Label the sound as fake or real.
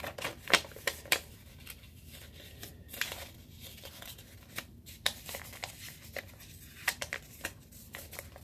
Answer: fake